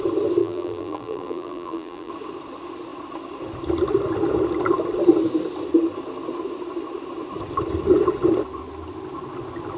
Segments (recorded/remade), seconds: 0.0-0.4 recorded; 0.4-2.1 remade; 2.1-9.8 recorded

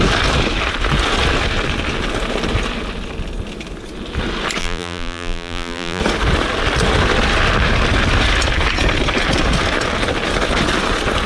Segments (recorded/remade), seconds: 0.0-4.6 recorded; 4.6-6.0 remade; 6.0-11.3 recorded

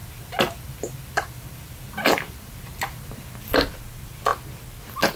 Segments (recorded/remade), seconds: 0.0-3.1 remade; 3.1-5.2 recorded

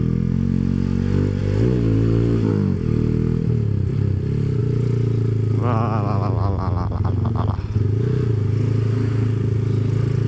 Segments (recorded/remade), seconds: 0.0-1.4 recorded; 1.4-2.5 remade; 2.5-10.3 recorded